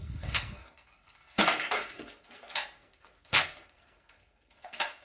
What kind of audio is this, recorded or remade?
remade